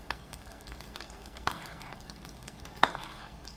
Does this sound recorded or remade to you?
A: remade